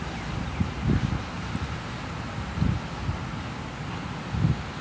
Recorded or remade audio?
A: recorded